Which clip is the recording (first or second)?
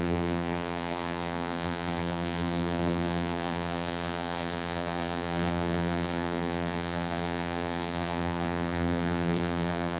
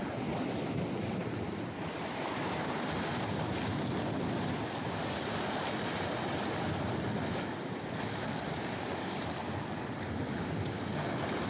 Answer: second